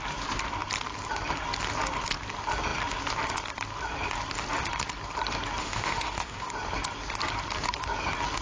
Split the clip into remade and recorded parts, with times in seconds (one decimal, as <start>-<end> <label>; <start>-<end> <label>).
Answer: 0.0-5.6 recorded; 5.6-6.5 remade; 6.5-8.4 recorded